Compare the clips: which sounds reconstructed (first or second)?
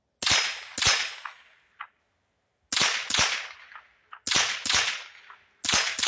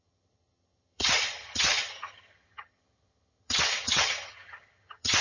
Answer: second